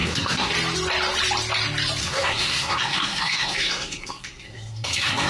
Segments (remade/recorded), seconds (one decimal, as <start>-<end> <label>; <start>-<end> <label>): 0.0-0.5 remade; 0.5-2.0 recorded; 2.0-5.3 remade